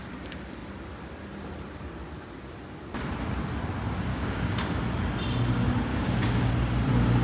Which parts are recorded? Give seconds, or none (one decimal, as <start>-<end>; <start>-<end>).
0.0-4.1; 4.8-5.9; 6.5-7.2